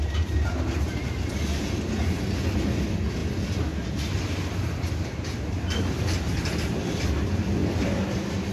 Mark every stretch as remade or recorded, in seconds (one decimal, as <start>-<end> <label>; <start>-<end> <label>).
0.0-8.5 recorded